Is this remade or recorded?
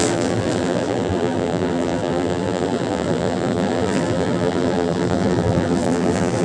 remade